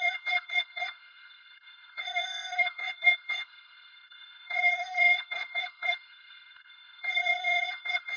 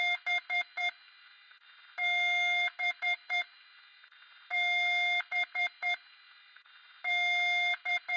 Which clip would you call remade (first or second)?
first